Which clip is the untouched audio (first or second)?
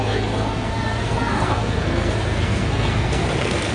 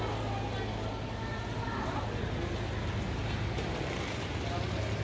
second